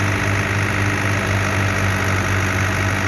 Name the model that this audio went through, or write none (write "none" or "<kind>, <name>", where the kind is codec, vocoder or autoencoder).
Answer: none